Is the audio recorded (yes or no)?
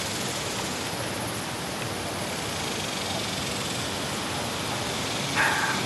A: yes